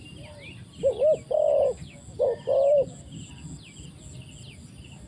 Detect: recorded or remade recorded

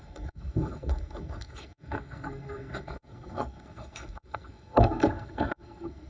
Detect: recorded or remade remade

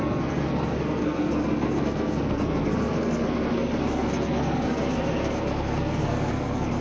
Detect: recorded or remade remade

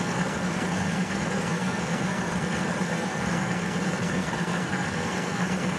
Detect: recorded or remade remade